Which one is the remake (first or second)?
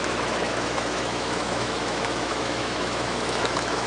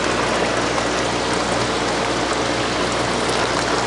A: first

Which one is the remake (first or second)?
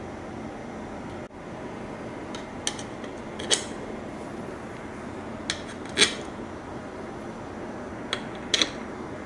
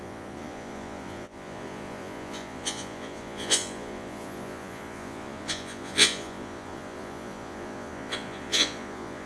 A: second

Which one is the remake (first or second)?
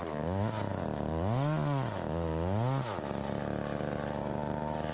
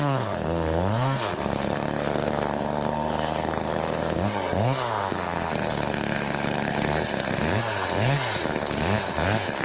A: second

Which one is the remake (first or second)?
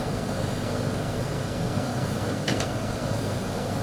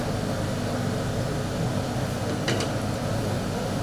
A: first